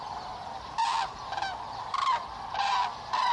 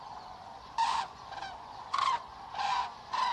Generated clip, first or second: second